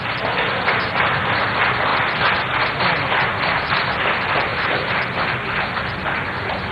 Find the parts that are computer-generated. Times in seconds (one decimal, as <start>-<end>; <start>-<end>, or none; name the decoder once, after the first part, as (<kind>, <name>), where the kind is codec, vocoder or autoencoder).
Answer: 3.3-3.8 (vocoder, BigVGAN v2); 4.5-5.5